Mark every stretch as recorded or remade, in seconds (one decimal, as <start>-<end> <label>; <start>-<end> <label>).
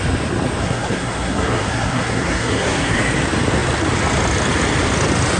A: 0.0-0.6 recorded; 0.6-3.0 remade; 3.0-5.4 recorded